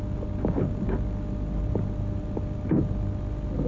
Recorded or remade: recorded